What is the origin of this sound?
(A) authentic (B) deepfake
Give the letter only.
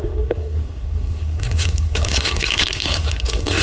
B